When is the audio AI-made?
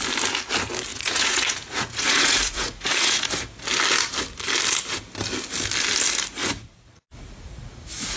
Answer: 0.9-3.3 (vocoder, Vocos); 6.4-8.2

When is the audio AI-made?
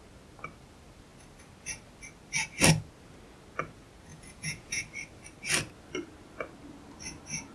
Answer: 4.1-4.8 (vocoder, Vocos)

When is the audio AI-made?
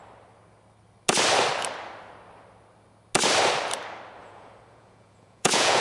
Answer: 4.2-5.8 (vocoder, Vocos)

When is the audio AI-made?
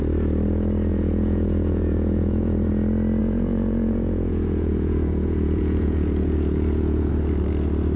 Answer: 0.9-2.7 (vocoder, Vocos); 3.2-7.1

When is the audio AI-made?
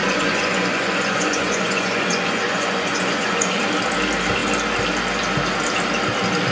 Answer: 0.0-3.6 (vocoder, Vocos)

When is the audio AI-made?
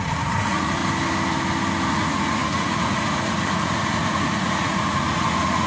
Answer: 0.0-0.8 (vocoder, Vocos); 1.9-5.7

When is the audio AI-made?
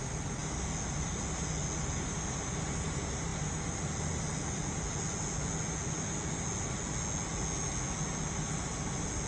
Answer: none